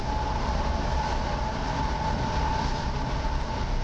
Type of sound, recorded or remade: recorded